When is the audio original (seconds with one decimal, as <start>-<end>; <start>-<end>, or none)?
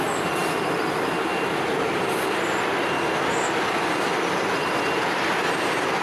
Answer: 0.0-6.0